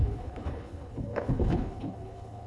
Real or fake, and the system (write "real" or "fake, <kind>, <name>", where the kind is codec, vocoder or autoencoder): fake, codec, HILCodec